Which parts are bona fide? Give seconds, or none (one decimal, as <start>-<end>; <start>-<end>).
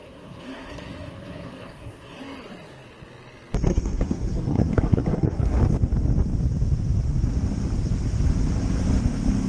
2.2-3.7; 5.6-9.5